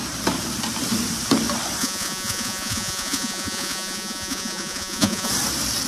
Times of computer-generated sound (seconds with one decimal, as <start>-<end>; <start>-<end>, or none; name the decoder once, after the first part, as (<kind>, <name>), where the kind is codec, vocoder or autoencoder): 1.8-5.3 (vocoder, Vocos)